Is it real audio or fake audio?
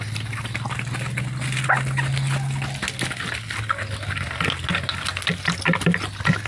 real